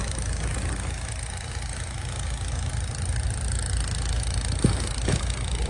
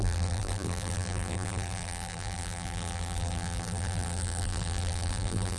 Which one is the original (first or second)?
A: first